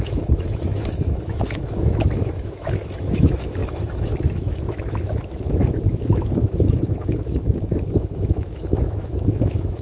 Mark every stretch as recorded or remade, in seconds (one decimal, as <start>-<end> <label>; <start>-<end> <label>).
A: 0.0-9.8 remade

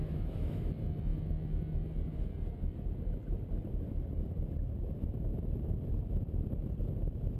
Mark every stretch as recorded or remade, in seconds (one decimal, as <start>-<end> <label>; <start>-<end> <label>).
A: 0.0-0.7 remade; 0.7-7.4 recorded

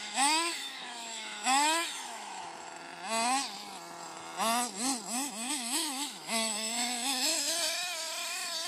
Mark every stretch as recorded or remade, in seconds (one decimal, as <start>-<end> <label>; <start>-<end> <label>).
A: 0.0-2.5 remade; 2.5-5.5 recorded; 5.5-7.3 remade; 7.3-8.7 recorded